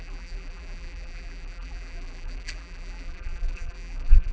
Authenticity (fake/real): fake